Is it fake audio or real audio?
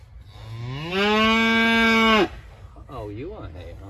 real